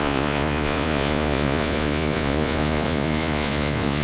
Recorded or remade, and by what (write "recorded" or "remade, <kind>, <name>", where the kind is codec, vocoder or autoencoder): remade, vocoder, Vocos